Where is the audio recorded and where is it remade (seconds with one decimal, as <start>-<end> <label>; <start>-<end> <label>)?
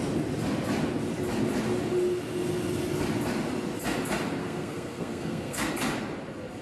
0.0-4.4 recorded; 4.4-5.7 remade; 5.7-6.6 recorded